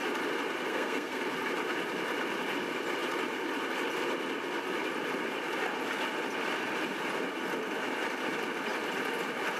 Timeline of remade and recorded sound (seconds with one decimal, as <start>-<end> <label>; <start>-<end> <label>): 0.0-0.7 recorded; 0.7-1.2 remade; 1.2-9.6 recorded